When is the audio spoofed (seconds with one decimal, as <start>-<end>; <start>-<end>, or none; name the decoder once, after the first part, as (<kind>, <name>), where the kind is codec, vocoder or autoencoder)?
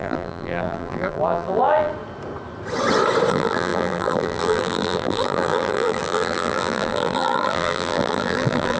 0.0-1.9 (vocoder, BigVGAN v2); 3.3-8.8